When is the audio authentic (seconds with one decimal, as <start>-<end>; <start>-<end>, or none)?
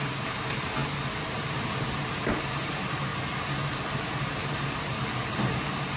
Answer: 3.1-4.0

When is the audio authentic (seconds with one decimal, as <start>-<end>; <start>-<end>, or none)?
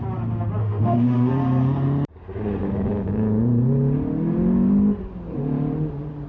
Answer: 0.0-0.6; 1.3-6.3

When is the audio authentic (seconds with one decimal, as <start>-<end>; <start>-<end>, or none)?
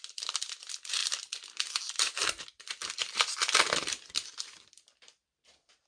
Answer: 0.0-2.8; 4.7-5.9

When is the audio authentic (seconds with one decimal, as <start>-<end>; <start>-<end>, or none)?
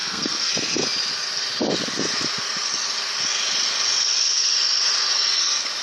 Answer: 0.5-5.8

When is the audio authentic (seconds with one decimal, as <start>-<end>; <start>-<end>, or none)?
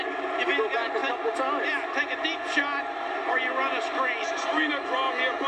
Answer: 0.0-5.5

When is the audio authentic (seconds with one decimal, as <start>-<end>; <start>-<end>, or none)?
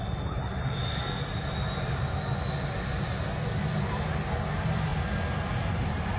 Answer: 0.9-4.5; 4.9-5.7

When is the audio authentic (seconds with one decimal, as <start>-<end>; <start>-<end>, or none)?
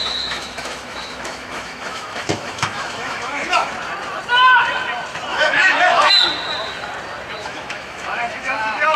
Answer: 3.7-5.3; 6.1-7.4